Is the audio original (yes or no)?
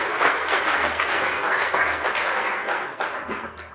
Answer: no